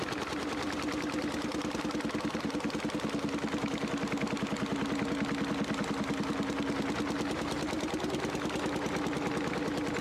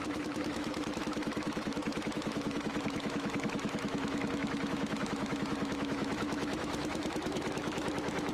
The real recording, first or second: first